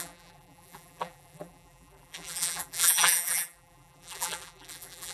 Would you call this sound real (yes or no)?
no